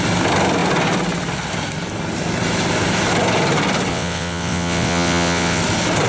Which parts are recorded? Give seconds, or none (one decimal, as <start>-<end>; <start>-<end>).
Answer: 0.0-3.9; 5.6-6.1